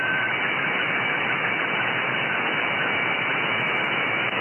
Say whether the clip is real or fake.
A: fake